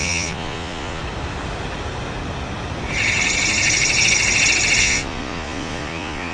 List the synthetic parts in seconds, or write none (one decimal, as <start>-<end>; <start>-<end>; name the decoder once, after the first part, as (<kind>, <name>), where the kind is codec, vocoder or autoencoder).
0.0-1.0 (vocoder, Vocos); 4.8-6.3